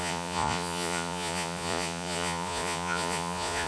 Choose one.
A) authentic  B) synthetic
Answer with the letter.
B